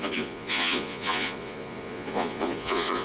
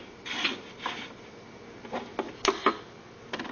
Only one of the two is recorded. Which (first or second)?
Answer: second